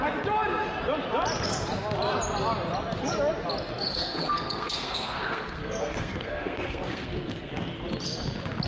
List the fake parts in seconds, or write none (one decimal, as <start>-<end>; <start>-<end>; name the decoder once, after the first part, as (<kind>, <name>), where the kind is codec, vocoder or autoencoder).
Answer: 3.9-7.5 (codec, SNAC)